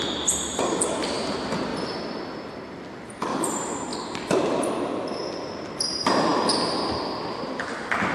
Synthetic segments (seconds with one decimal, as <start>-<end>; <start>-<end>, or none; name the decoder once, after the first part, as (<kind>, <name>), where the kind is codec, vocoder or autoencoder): 0.0-1.7 (vocoder, BigVGAN v2); 3.5-8.1